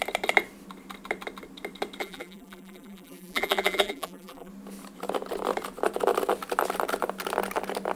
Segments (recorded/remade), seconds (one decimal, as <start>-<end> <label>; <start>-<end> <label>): 0.0-2.0 recorded; 2.0-4.5 remade; 4.5-8.0 recorded

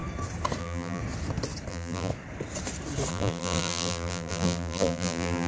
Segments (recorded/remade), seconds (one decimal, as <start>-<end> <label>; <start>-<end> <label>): 0.0-0.6 recorded; 0.6-1.0 remade; 1.0-1.7 recorded; 1.7-2.1 remade; 2.1-3.1 recorded; 3.1-5.5 remade